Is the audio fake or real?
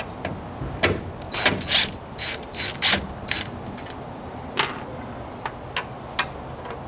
real